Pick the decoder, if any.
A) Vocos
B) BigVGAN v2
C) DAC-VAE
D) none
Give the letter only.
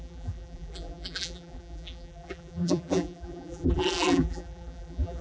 B